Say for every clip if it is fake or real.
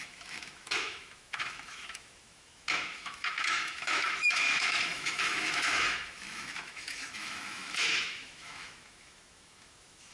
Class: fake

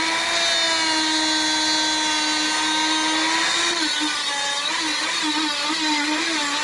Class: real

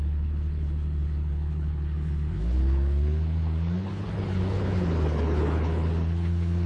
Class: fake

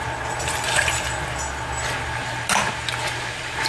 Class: real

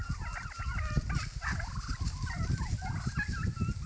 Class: real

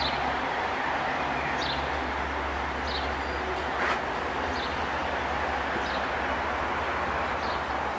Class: real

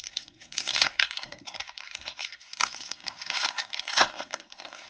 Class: fake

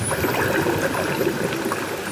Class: real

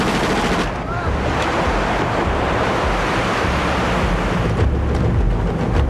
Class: real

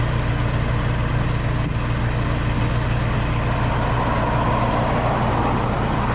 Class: real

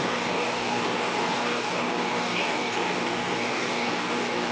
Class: fake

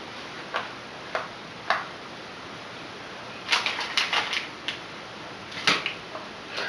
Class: real